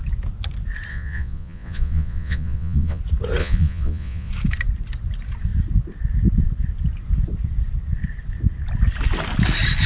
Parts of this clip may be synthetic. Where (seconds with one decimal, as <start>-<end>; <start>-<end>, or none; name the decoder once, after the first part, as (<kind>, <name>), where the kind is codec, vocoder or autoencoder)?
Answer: 0.9-3.0 (vocoder, Vocos); 3.4-4.3